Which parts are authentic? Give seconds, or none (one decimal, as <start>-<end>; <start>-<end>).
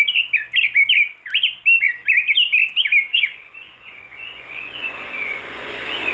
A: 0.0-3.1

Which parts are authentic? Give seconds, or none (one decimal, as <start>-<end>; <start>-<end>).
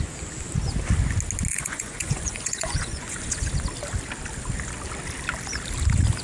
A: 0.0-1.5; 3.5-6.2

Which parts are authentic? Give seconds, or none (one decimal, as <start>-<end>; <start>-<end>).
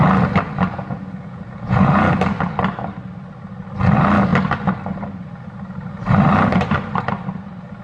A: 0.0-0.7; 2.1-7.8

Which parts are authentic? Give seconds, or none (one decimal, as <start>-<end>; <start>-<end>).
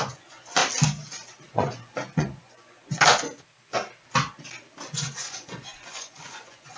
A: 0.6-1.4; 2.8-4.9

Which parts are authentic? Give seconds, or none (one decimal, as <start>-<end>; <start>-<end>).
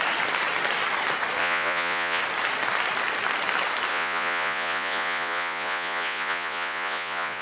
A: 0.0-1.4; 2.2-3.9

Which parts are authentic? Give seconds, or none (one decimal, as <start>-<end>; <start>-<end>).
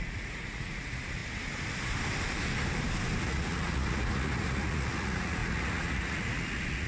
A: 1.2-3.2